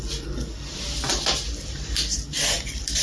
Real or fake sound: real